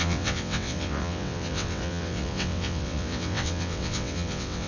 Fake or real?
fake